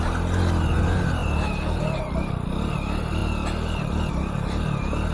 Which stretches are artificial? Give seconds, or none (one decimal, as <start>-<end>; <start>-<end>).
none